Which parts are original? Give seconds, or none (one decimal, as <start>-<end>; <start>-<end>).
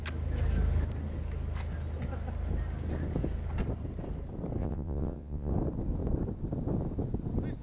0.0-4.6; 5.5-7.6